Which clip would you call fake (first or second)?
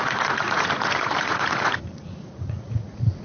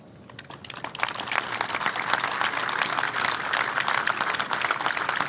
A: first